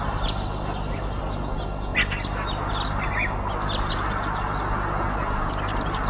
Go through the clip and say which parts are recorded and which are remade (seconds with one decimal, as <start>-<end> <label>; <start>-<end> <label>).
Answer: 0.0-6.1 recorded